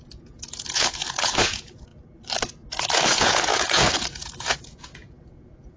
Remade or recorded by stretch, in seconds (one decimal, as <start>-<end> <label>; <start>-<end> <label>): 0.0-1.9 remade; 1.9-2.7 recorded; 2.7-5.8 remade